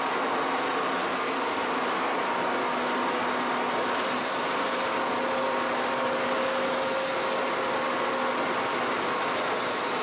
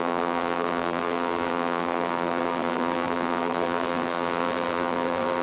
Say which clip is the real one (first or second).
first